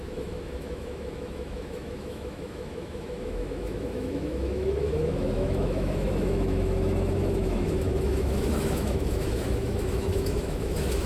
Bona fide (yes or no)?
no